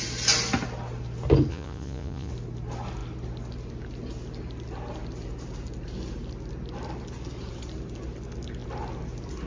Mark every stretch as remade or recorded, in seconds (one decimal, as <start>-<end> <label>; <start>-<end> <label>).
0.0-1.5 recorded; 1.5-2.3 remade; 2.3-9.5 recorded